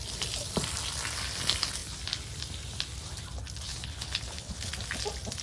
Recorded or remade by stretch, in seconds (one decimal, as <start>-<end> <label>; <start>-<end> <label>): 0.0-3.7 recorded; 3.7-4.7 remade; 4.7-5.4 recorded